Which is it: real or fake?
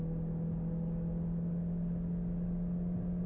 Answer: real